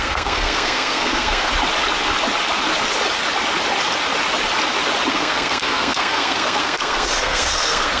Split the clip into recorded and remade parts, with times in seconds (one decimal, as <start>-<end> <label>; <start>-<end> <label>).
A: 0.0-1.5 remade; 1.5-5.1 recorded; 5.1-8.0 remade